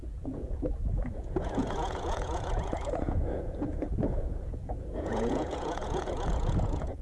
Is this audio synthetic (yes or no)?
yes